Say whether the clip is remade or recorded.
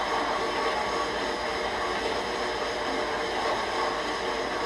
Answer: recorded